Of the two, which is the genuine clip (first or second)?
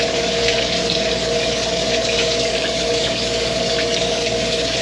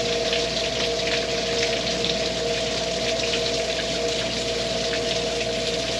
second